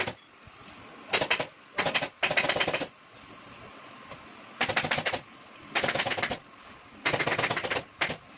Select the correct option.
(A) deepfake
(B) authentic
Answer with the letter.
B